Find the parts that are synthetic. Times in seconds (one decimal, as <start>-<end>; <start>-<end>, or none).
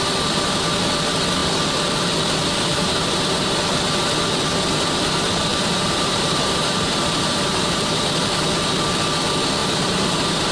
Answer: 2.7-3.6; 5.5-8.0; 9.6-10.5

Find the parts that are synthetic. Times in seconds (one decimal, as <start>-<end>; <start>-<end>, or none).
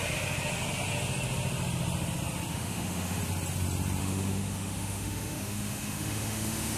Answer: 2.5-3.2; 4.0-6.8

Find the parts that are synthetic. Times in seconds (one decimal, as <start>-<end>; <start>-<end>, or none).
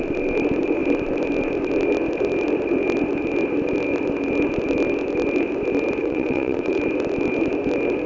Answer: 6.0-6.8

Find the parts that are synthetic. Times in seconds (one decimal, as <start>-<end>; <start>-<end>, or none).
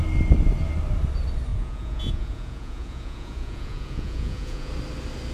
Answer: 1.5-4.7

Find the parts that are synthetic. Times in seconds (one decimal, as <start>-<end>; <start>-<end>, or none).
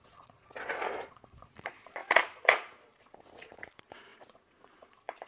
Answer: 0.0-5.3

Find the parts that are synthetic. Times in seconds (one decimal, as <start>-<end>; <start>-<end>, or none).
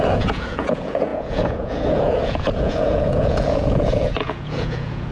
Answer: 0.0-5.1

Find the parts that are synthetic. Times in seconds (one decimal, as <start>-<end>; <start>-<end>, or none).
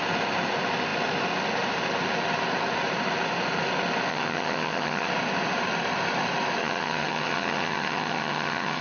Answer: 4.1-5.1; 6.6-8.8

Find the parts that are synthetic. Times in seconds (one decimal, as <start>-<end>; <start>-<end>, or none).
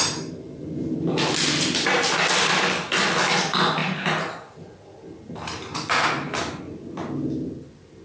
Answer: none